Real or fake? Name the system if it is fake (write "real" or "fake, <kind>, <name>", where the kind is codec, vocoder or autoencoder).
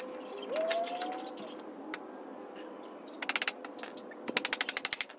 real